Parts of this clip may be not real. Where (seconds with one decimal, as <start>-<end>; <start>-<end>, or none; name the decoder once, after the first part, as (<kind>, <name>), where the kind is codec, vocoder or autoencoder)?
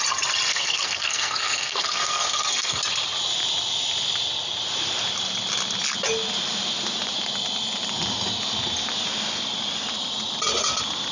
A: 0.5-2.8 (codec, SNAC)